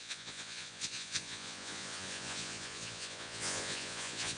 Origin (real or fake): fake